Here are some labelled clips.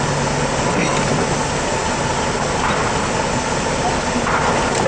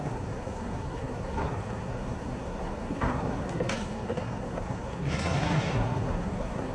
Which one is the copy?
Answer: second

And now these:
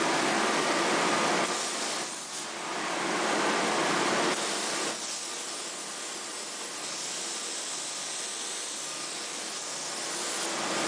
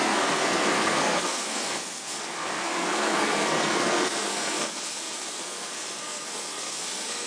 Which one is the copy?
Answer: second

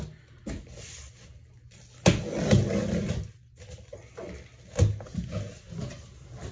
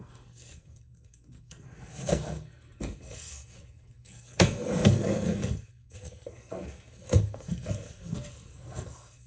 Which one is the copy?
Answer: second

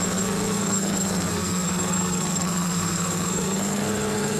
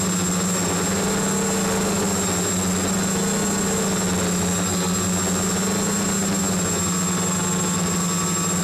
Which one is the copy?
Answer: first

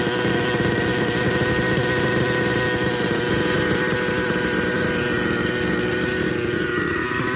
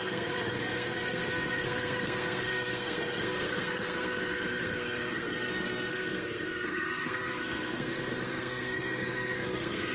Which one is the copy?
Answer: second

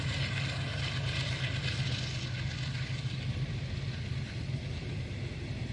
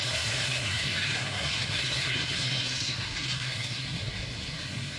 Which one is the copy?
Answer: second